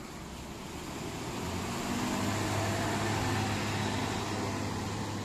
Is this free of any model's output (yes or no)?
yes